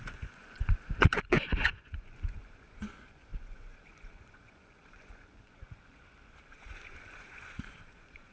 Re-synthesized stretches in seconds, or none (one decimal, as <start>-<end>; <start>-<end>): 0.0-8.3